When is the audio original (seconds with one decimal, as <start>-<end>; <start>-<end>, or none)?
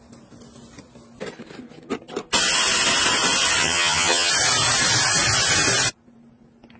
0.0-3.6; 4.3-6.8